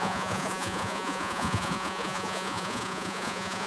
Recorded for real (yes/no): no